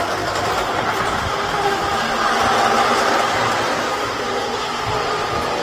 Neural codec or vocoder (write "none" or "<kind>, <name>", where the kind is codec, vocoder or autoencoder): none